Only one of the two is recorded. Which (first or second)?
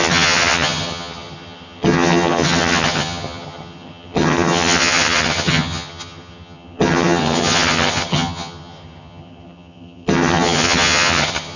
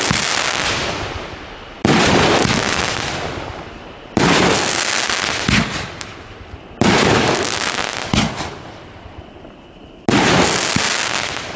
second